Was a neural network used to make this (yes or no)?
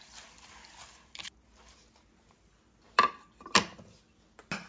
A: no